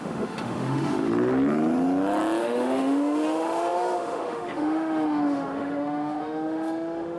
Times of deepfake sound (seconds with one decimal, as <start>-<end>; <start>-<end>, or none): 0.0-1.1; 2.4-7.2